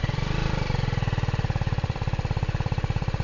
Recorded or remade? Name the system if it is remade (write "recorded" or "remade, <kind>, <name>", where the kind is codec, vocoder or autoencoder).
remade, vocoder, BigVGAN v2